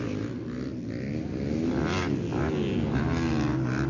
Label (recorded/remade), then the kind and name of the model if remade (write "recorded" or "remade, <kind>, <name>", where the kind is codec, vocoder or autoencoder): recorded